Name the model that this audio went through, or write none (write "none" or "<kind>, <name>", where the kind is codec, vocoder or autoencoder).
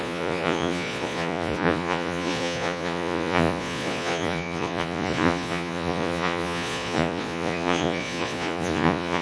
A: vocoder, Vocos